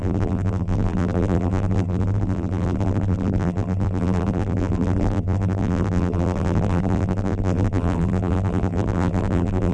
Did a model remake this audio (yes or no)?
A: yes